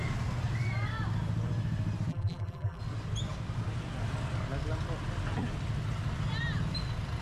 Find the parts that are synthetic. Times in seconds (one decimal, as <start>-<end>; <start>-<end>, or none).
2.1-2.8